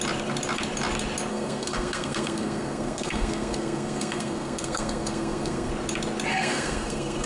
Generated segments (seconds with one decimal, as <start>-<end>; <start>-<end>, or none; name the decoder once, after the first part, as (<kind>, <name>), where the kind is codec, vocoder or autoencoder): 1.3-5.7 (codec, SNAC); 6.3-7.3